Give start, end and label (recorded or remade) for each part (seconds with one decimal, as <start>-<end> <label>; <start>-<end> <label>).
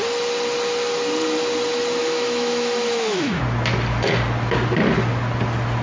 0.0-2.0 recorded; 2.0-3.4 remade; 3.4-5.8 recorded